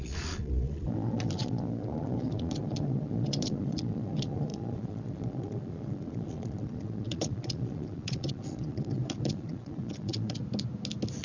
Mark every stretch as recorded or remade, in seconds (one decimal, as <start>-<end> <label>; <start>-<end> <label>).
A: 0.0-10.4 remade; 10.4-11.2 recorded